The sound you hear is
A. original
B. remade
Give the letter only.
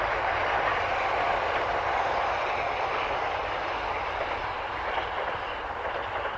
A